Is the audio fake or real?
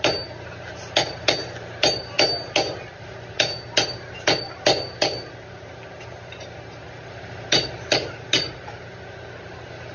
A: real